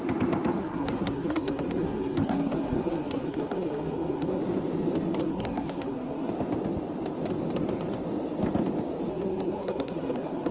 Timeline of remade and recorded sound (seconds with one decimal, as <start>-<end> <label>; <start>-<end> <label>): 0.0-0.6 recorded; 0.6-4.4 remade; 4.4-5.2 recorded; 5.2-6.3 remade; 6.3-9.1 recorded; 9.1-10.5 remade